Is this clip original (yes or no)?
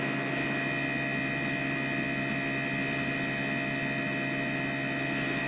yes